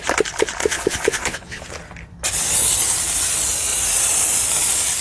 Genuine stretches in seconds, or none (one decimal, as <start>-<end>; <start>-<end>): 0.0-0.6; 1.6-5.0